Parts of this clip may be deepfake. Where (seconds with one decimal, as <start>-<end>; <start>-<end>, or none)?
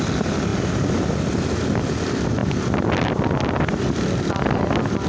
none